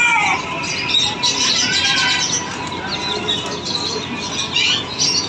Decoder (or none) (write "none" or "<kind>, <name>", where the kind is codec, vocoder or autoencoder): none